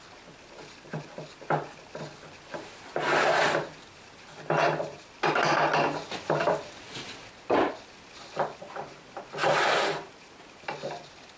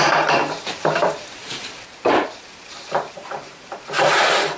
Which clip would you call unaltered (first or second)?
first